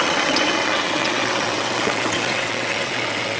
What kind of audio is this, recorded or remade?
remade